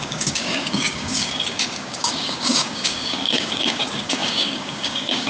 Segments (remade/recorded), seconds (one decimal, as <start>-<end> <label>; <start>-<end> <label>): 0.0-5.3 remade